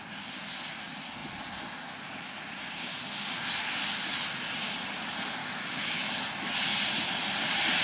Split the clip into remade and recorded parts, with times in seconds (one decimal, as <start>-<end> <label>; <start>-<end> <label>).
0.0-5.4 recorded; 5.4-6.1 remade; 6.1-7.8 recorded